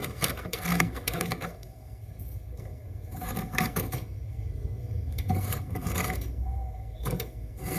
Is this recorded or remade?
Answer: remade